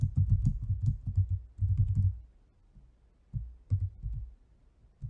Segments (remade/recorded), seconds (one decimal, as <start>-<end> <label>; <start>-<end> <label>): 0.0-5.1 recorded